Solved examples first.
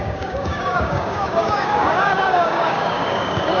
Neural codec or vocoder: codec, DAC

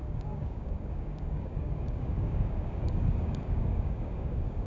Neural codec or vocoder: codec, DAC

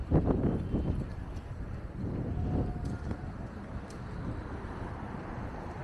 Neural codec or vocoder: none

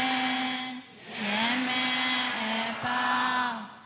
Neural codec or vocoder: none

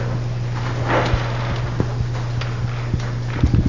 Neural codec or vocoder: none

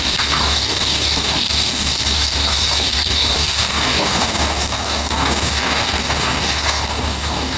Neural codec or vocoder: codec, DAC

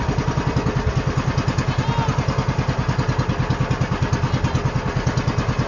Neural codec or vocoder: none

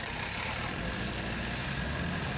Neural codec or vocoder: none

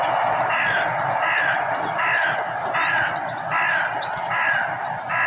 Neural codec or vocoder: none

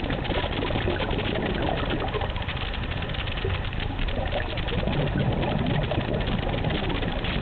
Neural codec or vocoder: none